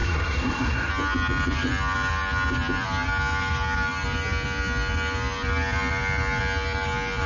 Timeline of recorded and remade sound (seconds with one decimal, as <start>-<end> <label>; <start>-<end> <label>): 0.0-0.9 remade; 0.9-7.3 recorded